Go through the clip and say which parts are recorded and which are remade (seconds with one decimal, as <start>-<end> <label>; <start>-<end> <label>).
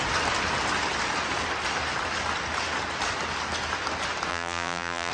0.0-4.3 recorded; 4.3-5.1 remade